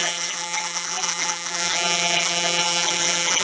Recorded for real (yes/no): no